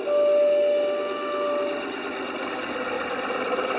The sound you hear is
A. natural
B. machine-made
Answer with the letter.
A